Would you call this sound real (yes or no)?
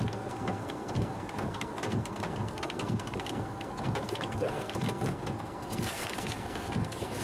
no